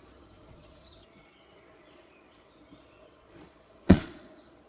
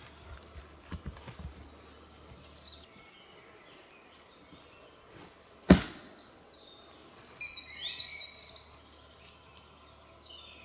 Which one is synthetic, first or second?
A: first